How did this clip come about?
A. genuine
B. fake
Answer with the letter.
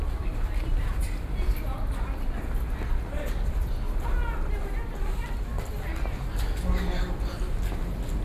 A